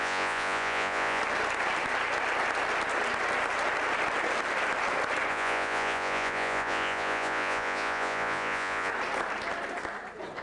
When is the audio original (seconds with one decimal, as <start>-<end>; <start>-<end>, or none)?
1.2-5.3; 8.9-10.4